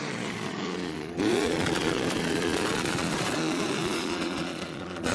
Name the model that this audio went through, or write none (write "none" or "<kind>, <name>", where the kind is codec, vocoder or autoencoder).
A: vocoder, Vocos